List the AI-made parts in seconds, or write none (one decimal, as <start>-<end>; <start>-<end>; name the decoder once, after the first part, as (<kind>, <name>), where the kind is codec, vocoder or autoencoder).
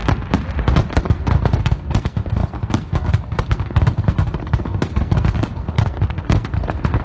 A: 1.0-7.0 (codec, SNAC)